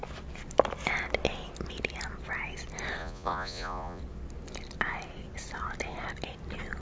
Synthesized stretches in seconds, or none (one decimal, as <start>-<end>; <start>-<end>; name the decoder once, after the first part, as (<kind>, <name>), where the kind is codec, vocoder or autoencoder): 3.0-4.0 (vocoder, Vocos)